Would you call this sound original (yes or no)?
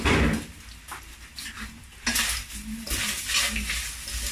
yes